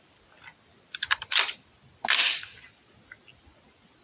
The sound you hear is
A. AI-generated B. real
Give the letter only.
B